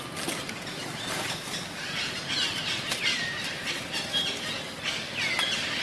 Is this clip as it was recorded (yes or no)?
yes